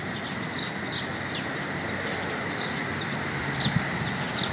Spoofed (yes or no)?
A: no